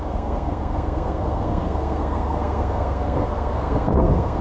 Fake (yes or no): yes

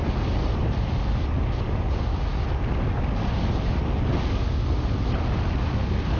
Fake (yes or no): no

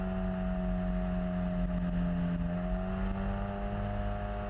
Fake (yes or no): no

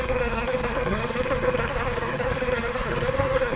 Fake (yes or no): yes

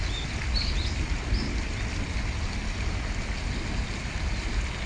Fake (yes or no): no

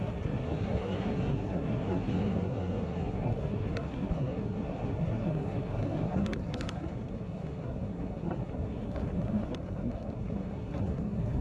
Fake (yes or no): yes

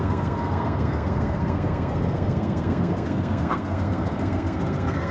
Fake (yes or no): yes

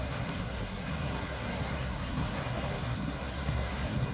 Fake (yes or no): yes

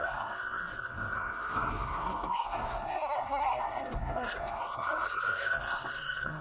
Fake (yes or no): yes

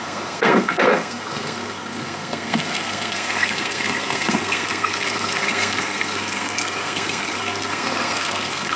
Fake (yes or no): yes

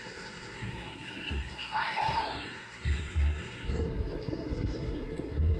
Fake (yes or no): yes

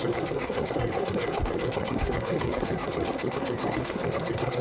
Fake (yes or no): yes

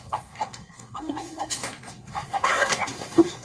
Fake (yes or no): yes